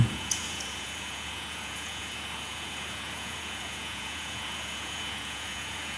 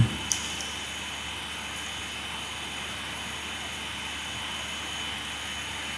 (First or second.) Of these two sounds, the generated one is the first